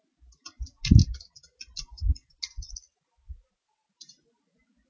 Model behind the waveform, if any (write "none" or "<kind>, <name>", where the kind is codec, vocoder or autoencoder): none